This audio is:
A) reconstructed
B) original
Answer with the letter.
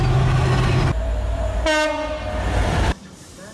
B